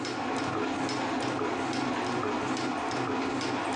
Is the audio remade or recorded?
recorded